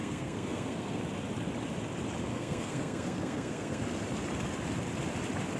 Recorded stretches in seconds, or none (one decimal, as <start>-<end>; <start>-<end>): 1.0-2.3; 3.8-5.6